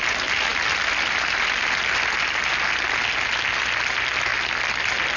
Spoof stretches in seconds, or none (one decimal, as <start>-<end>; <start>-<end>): none